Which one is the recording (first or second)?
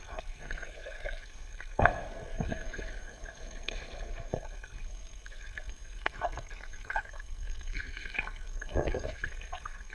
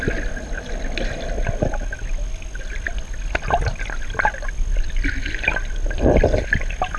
second